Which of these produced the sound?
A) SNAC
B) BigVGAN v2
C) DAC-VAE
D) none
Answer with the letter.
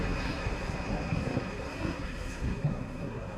A